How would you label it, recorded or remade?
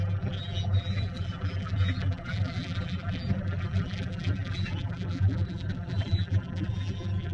remade